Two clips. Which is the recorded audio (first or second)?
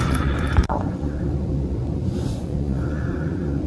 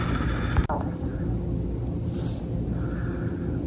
second